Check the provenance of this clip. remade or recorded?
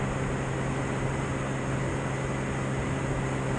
recorded